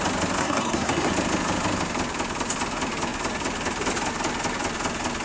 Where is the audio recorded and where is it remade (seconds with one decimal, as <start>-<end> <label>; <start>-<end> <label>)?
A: 0.0-0.4 recorded; 0.4-1.1 remade; 1.1-5.2 recorded